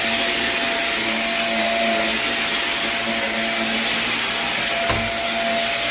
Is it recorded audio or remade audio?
recorded